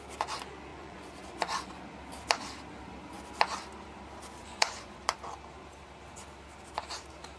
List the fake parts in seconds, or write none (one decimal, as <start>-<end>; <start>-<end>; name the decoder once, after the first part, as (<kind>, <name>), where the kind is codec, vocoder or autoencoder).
0.7-1.8 (vocoder, Vocos); 4.4-5.0